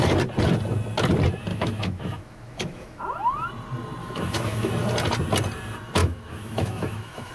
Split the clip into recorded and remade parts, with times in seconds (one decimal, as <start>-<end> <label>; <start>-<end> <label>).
0.0-1.5 recorded; 1.5-3.0 remade; 3.0-4.0 recorded; 4.0-4.7 remade; 4.7-6.0 recorded; 6.0-7.3 remade